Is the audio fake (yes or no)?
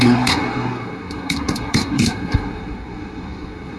yes